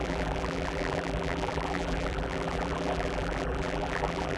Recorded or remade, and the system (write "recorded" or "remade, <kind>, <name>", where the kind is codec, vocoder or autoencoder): remade, vocoder, BigVGAN v2